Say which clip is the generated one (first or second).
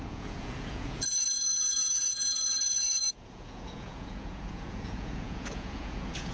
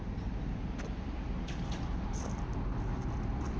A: first